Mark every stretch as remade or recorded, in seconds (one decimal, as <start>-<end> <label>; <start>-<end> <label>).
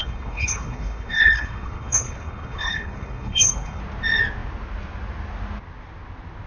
0.0-3.8 remade; 3.8-6.5 recorded